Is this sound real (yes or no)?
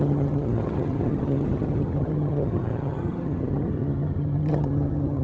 no